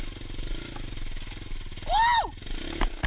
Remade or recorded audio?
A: recorded